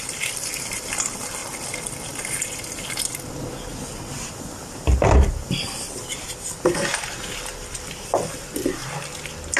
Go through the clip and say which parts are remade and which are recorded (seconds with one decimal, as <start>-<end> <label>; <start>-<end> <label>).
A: 0.0-9.6 recorded